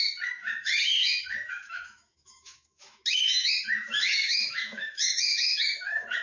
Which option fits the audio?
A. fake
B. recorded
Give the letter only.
A